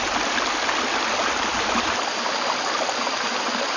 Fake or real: real